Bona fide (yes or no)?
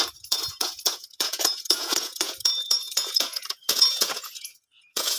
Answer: no